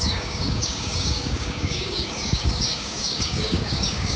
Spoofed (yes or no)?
yes